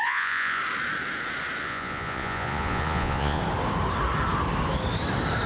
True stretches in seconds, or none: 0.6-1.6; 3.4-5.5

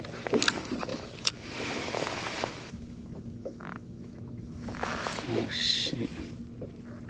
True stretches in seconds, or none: 0.0-0.9; 5.2-7.1

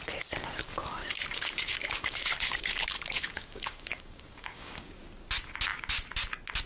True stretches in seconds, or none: 0.0-1.0; 5.0-6.7